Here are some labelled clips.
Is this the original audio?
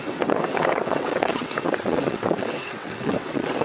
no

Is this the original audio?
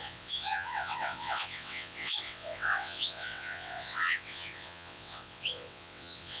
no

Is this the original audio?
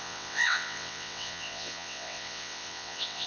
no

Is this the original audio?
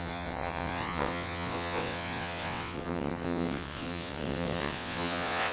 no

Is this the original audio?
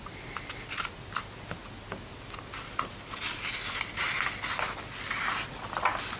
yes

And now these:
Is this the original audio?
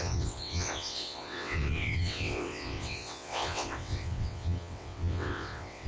no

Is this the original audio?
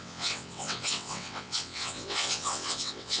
no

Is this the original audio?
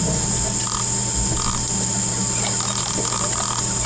yes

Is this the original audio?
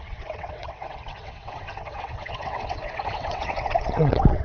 no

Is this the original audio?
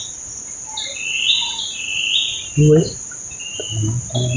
yes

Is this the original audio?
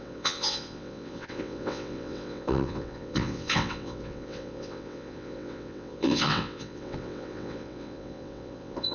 no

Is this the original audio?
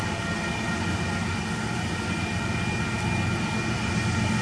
yes